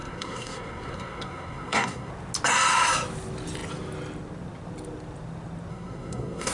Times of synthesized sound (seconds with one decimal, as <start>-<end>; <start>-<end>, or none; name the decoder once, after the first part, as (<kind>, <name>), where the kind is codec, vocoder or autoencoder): 0.0-2.1 (codec, SNAC); 5.7-6.5